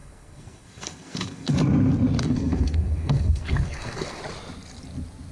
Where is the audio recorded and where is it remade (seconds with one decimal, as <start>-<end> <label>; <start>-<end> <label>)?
0.0-1.5 remade; 1.5-2.2 recorded; 2.2-4.2 remade; 4.2-5.3 recorded